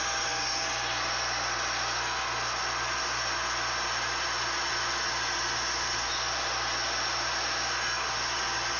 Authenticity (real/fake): real